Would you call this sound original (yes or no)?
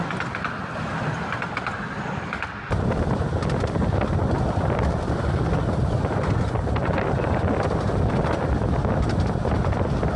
yes